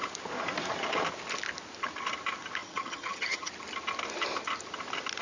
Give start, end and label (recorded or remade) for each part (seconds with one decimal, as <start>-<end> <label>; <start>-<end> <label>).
0.0-2.6 recorded; 2.6-3.5 remade; 3.5-5.2 recorded